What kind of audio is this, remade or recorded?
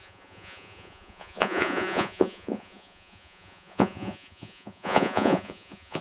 remade